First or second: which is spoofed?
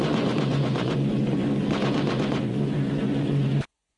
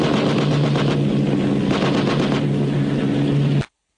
first